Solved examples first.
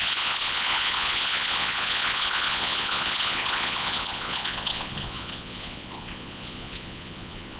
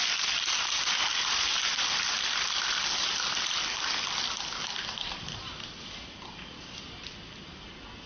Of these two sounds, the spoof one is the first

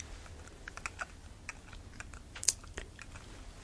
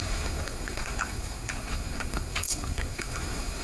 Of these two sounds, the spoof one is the second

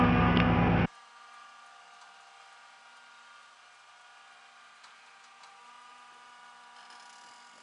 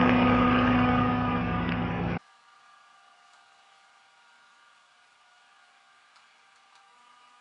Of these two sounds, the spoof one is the second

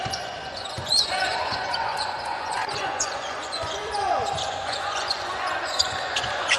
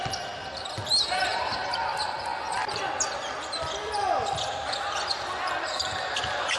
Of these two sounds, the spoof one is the first